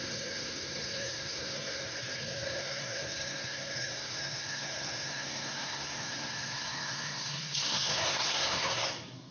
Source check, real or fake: fake